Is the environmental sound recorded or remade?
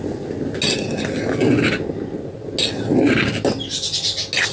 recorded